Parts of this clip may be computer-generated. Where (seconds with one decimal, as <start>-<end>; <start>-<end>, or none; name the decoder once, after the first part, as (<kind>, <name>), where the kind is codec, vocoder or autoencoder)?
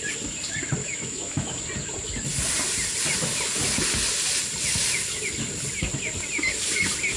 0.8-1.5 (autoencoder, DAC-VAE)